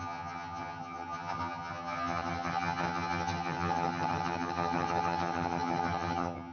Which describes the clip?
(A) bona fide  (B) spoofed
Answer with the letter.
B